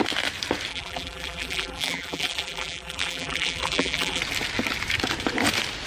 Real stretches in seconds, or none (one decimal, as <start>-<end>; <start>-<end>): 0.0-0.7; 4.2-5.9